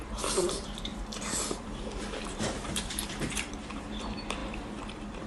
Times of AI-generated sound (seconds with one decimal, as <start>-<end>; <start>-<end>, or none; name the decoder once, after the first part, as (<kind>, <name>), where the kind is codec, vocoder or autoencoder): 0.0-5.3 (vocoder, BigVGAN v2)